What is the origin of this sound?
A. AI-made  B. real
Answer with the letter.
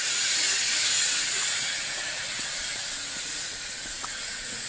A